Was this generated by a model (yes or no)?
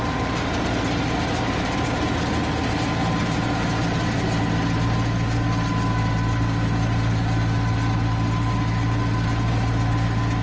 no